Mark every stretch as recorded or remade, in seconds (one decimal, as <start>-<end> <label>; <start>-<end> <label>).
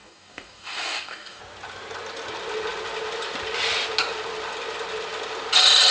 0.0-1.4 remade; 1.4-5.9 recorded